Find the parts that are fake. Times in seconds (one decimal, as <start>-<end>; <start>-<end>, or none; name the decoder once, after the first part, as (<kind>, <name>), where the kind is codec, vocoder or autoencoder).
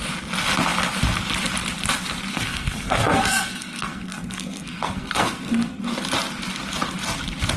2.3-5.8 (codec, SNAC)